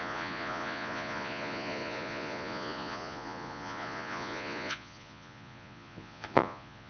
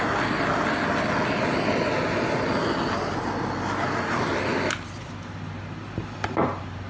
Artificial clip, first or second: first